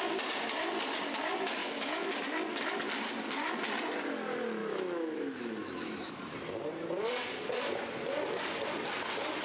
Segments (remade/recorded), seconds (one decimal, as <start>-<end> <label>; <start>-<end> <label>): 0.0-1.6 recorded; 1.6-2.1 remade; 2.1-4.6 recorded; 4.6-6.1 remade; 6.1-9.4 recorded